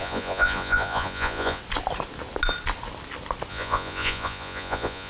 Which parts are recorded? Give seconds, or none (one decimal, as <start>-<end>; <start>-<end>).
1.6-3.5